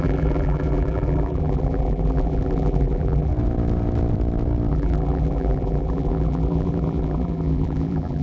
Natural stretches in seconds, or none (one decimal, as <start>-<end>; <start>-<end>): 3.3-4.7